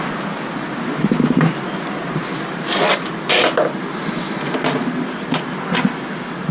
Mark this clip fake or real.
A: real